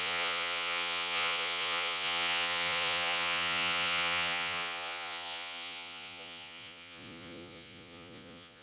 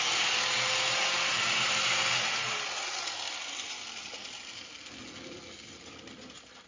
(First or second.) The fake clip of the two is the first